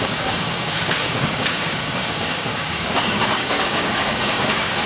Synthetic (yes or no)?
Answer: yes